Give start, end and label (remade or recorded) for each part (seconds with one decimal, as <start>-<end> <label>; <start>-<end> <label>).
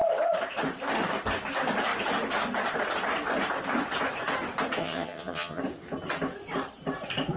0.0-4.8 recorded; 4.8-5.6 remade; 5.6-7.4 recorded